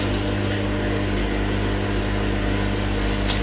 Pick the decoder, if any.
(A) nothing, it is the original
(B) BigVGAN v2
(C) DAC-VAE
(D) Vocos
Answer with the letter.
A